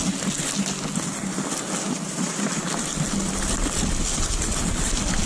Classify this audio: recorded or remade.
recorded